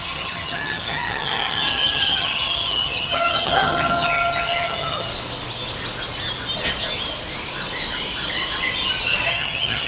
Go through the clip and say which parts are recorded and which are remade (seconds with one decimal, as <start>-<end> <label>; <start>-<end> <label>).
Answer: 0.0-5.1 remade; 5.1-9.3 recorded; 9.3-9.9 remade